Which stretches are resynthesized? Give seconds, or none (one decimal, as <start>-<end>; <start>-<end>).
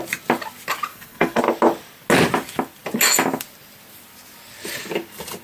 0.9-1.4